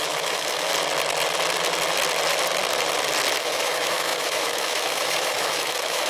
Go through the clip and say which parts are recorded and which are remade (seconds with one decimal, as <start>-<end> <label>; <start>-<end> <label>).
0.0-0.7 remade; 0.7-3.4 recorded; 3.4-6.1 remade